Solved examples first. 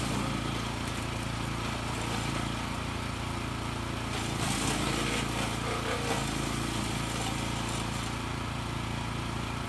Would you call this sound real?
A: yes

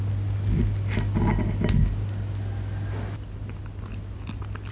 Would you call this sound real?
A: yes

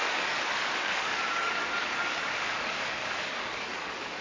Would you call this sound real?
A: no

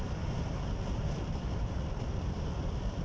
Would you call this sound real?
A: yes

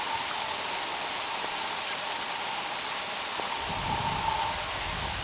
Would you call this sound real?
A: yes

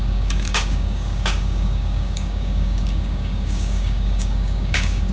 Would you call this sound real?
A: no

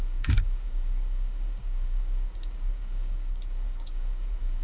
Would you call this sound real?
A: no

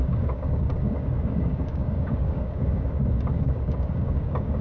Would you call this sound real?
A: no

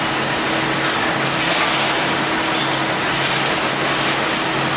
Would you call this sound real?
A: yes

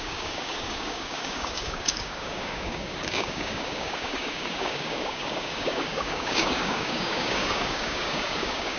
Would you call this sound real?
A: no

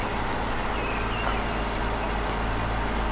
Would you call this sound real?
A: yes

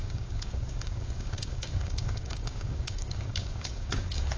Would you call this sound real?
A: no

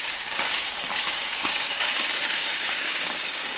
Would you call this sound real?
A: no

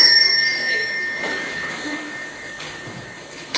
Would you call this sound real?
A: no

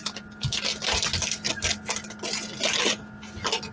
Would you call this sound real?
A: yes